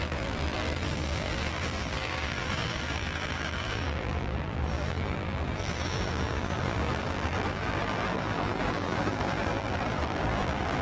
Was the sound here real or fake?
fake